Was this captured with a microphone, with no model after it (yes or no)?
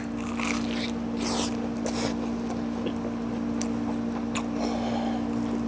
yes